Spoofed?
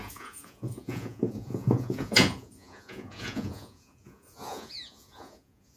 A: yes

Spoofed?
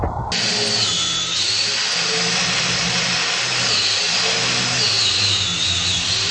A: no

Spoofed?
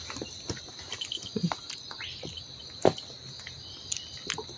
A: no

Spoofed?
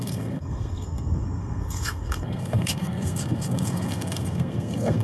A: yes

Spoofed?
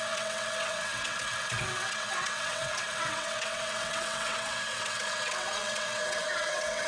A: yes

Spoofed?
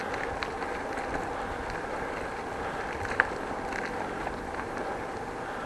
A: no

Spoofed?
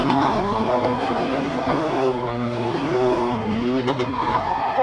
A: yes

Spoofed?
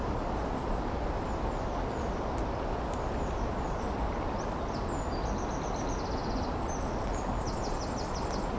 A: no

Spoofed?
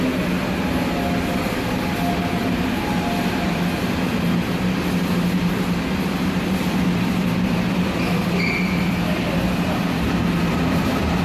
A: no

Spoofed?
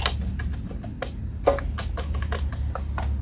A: no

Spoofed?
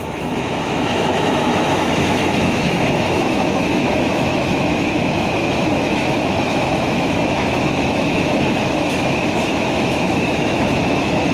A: yes